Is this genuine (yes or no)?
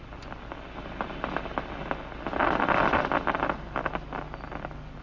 yes